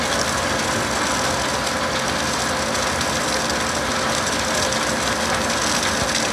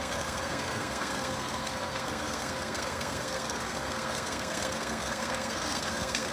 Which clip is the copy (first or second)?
second